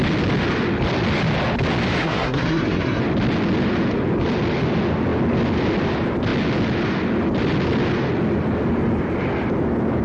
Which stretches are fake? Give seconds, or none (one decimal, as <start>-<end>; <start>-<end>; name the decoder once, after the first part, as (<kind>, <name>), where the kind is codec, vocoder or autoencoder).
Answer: 2.0-3.0 (codec, SNAC)